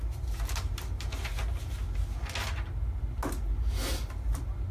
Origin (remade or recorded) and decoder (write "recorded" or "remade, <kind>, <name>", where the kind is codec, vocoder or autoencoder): recorded